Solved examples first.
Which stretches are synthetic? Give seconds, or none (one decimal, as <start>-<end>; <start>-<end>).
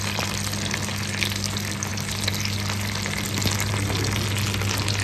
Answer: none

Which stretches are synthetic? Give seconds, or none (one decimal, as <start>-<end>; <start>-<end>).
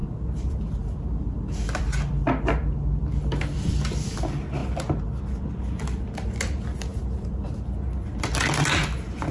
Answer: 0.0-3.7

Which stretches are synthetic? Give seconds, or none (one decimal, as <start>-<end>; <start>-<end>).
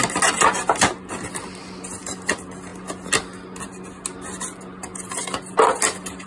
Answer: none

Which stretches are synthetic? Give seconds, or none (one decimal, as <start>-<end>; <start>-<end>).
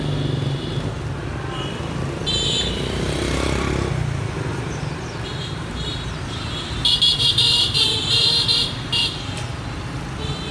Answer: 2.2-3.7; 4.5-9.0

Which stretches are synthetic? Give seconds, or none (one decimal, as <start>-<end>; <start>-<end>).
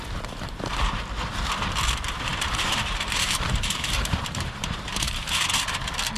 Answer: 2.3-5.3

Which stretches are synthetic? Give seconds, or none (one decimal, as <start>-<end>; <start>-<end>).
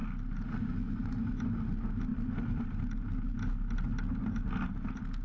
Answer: 2.1-2.7